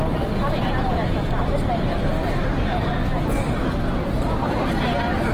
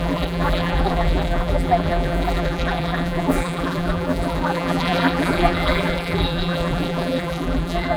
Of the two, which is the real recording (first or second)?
first